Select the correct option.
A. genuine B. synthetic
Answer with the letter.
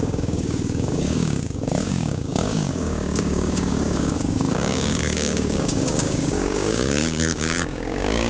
B